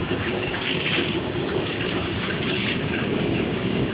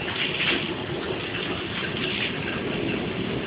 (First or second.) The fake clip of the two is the first